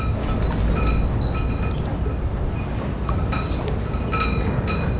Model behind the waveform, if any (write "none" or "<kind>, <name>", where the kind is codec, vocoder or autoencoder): none